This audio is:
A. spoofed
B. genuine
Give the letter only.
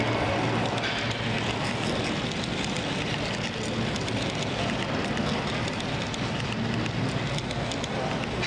B